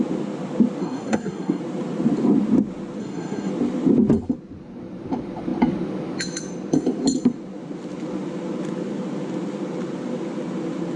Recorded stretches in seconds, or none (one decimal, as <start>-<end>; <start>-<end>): 0.0-0.8; 1.6-3.0; 3.5-11.0